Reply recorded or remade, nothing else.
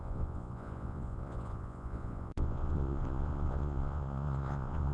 remade